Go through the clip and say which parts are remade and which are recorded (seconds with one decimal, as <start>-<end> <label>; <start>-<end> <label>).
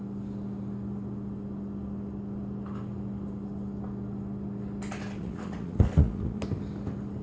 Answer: 0.0-5.2 recorded; 5.2-6.4 remade; 6.4-7.2 recorded